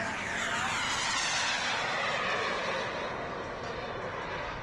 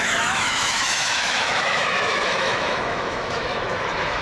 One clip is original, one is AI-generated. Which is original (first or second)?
first